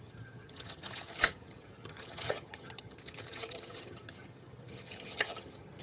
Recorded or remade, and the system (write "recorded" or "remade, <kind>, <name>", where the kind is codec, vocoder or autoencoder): remade, vocoder, HiFi-GAN